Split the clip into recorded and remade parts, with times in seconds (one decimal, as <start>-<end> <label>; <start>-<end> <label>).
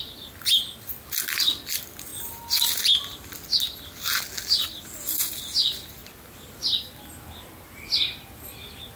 0.0-9.0 recorded